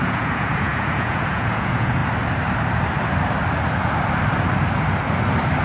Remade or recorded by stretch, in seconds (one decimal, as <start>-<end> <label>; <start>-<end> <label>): 0.0-2.0 remade; 2.0-5.6 recorded